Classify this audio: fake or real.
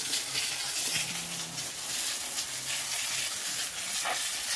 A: real